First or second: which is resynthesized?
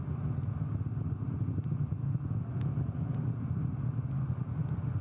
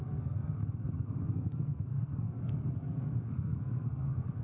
second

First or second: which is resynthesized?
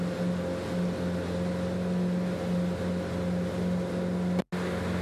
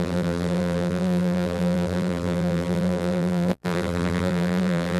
second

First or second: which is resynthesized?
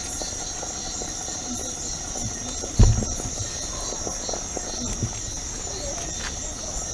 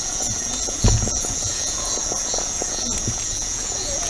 second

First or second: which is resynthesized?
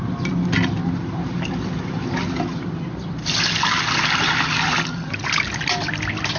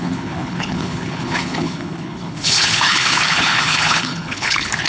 second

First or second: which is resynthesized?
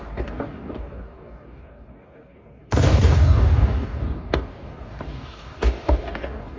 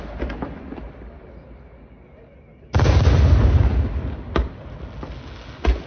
first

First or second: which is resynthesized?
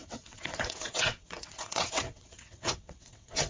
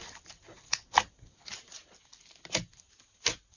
first